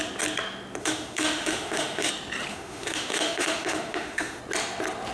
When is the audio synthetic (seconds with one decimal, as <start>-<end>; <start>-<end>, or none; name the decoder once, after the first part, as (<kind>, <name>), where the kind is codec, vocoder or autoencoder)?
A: 0.8-2.1 (autoencoder, DAC-VAE); 2.5-4.4